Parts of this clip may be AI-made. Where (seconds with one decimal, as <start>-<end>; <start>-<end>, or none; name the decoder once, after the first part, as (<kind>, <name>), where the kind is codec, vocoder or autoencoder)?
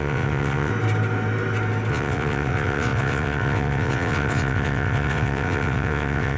0.0-0.7 (vocoder, WaveNeXt); 1.9-6.4